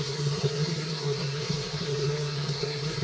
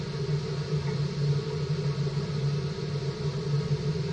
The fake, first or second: first